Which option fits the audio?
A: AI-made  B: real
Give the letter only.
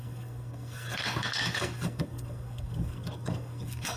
A